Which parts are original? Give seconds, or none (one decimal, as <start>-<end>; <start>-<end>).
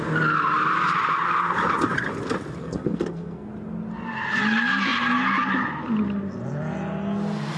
0.0-2.6; 3.5-7.6